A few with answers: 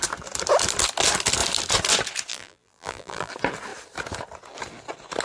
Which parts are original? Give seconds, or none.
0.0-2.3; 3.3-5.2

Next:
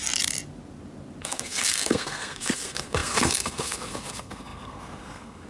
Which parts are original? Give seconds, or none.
0.0-1.2

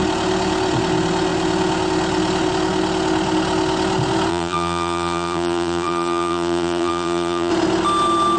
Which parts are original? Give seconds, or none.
0.0-4.3; 7.5-8.4

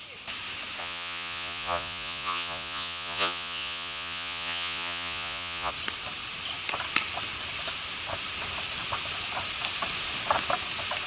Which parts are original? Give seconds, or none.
0.0-0.8; 5.7-11.1

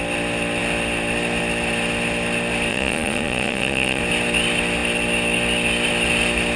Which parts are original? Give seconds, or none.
0.0-2.7; 4.0-6.6

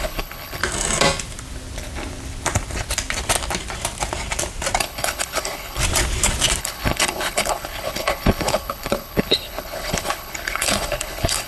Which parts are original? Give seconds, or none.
0.6-4.8; 5.8-6.6

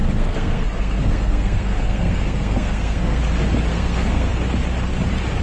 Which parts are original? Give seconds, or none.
3.2-3.7; 4.3-5.4